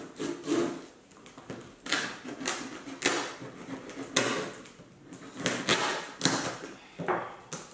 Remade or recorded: recorded